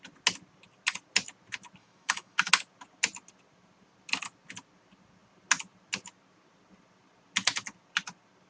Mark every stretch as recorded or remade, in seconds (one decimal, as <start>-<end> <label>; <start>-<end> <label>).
0.0-1.8 recorded; 1.8-2.5 remade; 2.5-8.5 recorded

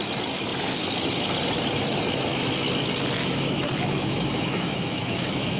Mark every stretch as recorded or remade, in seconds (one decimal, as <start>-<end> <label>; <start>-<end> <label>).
0.0-3.2 recorded; 3.2-5.6 remade

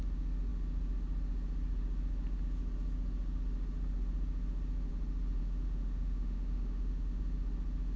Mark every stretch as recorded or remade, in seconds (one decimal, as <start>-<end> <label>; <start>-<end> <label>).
0.0-5.4 recorded; 5.4-7.2 remade; 7.2-8.0 recorded

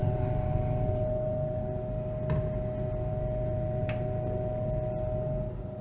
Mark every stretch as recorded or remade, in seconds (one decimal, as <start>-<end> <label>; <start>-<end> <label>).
0.0-5.8 recorded

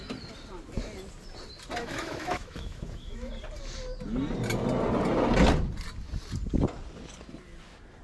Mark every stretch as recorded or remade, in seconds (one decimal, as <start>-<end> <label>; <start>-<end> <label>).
0.0-1.8 recorded; 1.8-3.3 remade; 3.3-8.0 recorded

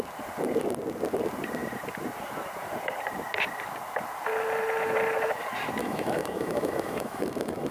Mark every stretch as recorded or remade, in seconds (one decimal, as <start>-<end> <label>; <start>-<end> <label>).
0.0-5.8 recorded; 5.8-7.7 remade